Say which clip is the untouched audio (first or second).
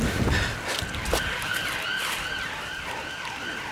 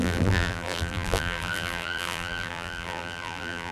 first